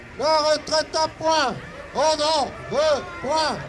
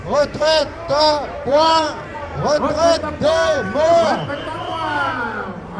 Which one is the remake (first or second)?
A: second